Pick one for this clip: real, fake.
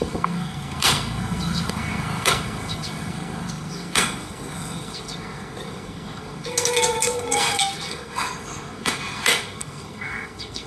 fake